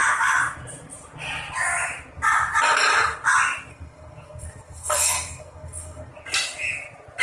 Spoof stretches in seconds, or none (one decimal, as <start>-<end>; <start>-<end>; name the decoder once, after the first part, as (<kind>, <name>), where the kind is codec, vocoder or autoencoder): 3.7-6.1 (codec, SNAC)